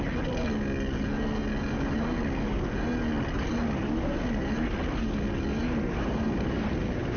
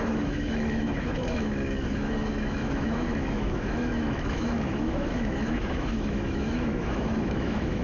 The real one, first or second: first